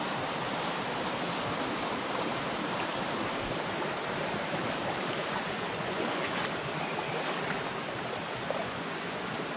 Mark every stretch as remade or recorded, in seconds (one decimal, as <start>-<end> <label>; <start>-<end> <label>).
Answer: 0.0-5.2 recorded; 5.2-6.4 remade; 6.4-8.6 recorded; 8.6-9.2 remade; 9.2-9.6 recorded